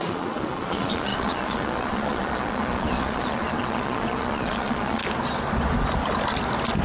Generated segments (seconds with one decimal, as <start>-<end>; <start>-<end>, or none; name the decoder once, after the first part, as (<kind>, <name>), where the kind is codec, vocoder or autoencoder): 0.0-5.0 (vocoder, Vocos)